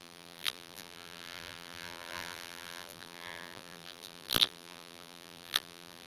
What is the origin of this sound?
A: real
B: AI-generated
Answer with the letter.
B